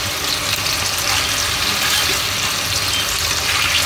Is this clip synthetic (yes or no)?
no